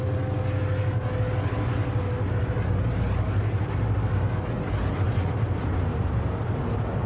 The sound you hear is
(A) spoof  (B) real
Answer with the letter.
B